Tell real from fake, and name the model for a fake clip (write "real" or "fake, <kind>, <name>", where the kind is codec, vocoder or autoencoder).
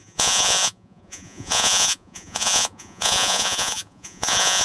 fake, vocoder, Vocos